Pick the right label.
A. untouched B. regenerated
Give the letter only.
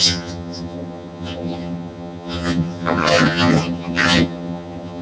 B